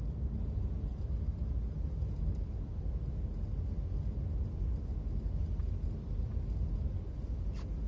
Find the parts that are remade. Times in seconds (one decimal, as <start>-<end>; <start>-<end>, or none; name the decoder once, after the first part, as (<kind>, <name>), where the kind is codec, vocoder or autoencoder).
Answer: none